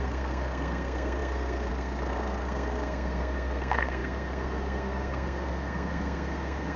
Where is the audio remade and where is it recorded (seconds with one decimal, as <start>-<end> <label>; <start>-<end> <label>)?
0.0-6.8 remade